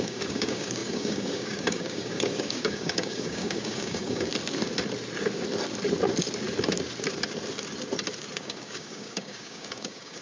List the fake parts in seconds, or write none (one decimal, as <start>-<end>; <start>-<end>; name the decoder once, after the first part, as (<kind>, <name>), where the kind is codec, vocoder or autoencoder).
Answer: 0.0-4.3 (codec, DAC); 8.4-10.2

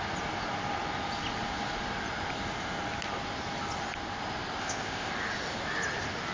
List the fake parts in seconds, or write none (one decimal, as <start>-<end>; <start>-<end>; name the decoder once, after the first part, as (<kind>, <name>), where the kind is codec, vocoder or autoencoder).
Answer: 4.6-5.1 (codec, ZipCodec)